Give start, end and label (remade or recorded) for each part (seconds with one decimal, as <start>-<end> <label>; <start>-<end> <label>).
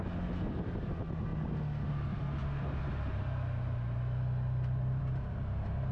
0.0-5.9 recorded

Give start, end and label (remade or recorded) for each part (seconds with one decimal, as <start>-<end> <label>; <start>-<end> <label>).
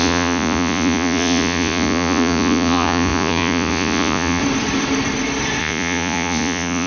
0.0-4.4 remade; 4.4-5.6 recorded; 5.6-6.9 remade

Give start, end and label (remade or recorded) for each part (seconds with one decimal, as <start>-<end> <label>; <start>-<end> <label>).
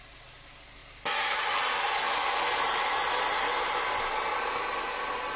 0.0-5.4 recorded